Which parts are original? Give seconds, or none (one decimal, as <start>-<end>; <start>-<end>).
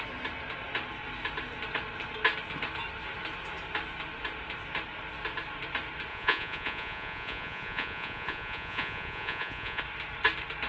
0.0-6.1; 9.8-10.7